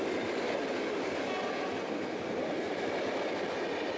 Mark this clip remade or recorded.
recorded